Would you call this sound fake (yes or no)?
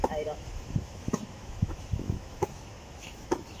yes